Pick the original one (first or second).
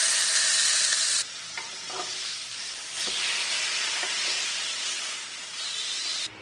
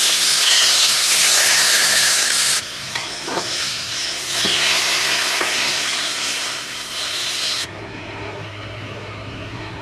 first